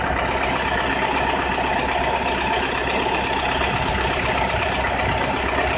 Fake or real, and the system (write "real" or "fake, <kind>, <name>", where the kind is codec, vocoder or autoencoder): real